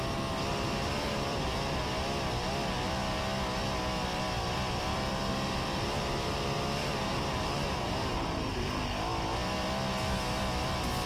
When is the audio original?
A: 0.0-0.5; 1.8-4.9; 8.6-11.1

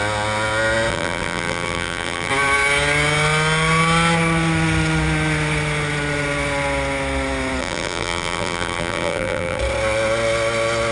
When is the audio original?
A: 0.0-0.9; 2.3-7.6; 9.6-10.9

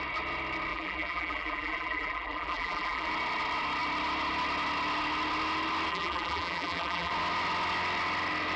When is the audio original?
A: 0.0-0.7; 3.1-5.9; 7.1-8.6